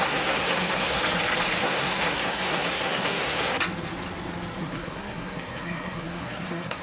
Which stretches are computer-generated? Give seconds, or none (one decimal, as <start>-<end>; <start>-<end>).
0.0-1.0; 1.6-3.6; 4.6-6.8